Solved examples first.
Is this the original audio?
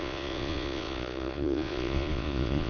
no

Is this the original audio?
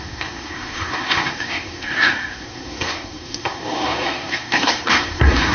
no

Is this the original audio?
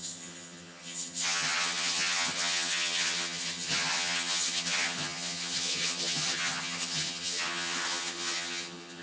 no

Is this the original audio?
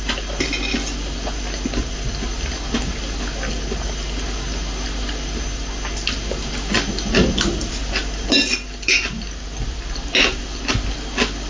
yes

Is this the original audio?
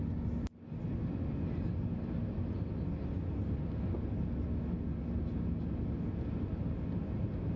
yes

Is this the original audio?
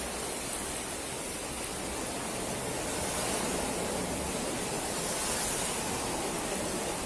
yes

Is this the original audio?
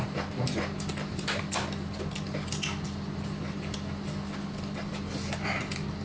yes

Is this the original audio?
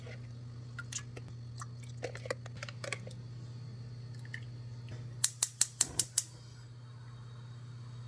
yes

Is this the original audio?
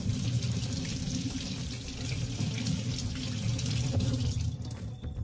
yes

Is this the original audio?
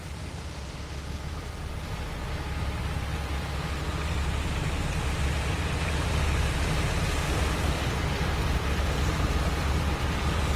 no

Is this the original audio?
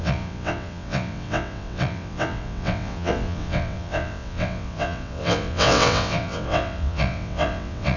no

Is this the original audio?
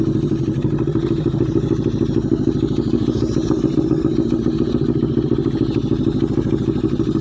yes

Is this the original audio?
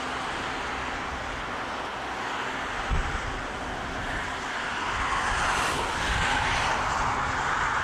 yes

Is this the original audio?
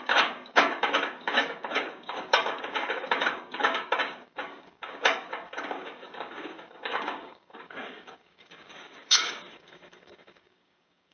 no